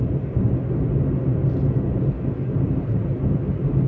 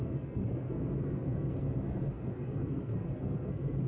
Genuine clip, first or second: first